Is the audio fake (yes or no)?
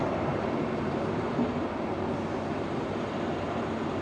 yes